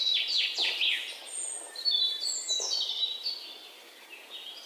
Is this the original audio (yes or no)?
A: yes